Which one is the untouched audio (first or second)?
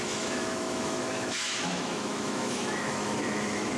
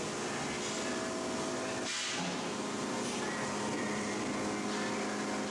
second